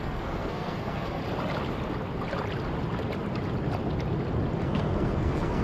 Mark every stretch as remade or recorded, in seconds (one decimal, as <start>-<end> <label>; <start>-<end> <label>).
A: 0.0-1.2 remade; 1.2-4.6 recorded; 4.6-5.6 remade